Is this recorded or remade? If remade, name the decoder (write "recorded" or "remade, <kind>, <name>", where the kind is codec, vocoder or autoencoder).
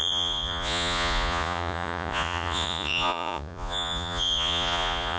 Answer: remade, vocoder, Vocos